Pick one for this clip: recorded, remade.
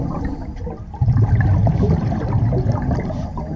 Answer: recorded